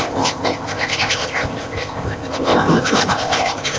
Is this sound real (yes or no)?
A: no